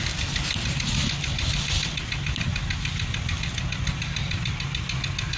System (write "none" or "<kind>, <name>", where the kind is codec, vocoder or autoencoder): none